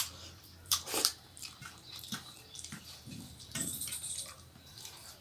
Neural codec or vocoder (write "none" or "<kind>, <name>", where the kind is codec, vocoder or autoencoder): vocoder, BigVGAN v2